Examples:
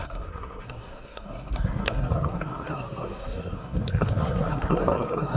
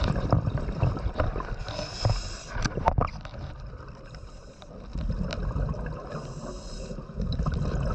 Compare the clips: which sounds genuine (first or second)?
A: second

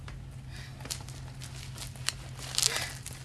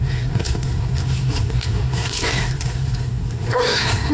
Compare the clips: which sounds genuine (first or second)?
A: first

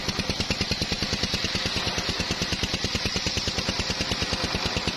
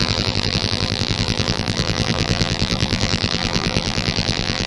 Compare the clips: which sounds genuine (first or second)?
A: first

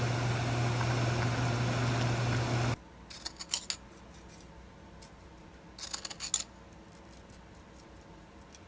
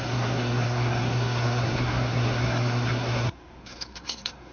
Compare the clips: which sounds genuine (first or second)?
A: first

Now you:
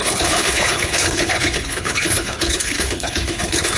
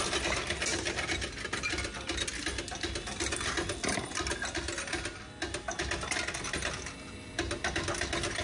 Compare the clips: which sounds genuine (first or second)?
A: second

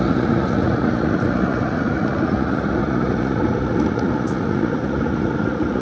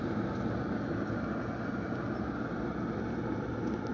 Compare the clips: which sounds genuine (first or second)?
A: second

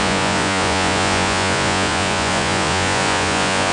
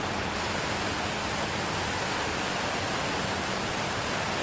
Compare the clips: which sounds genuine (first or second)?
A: second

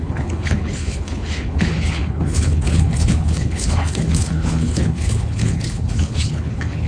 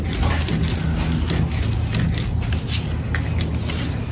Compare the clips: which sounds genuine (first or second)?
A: second